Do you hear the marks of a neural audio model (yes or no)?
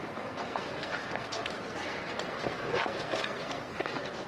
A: yes